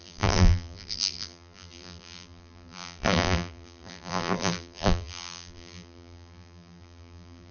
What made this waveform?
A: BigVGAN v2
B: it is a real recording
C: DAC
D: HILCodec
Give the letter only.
A